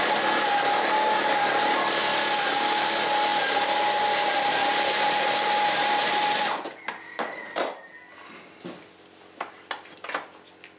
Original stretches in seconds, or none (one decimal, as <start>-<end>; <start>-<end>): 0.0-10.8